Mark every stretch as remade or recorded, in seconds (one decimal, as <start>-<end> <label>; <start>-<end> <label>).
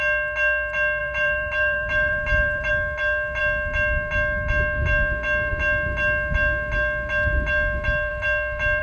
0.0-1.0 recorded; 1.0-2.7 remade; 2.7-8.8 recorded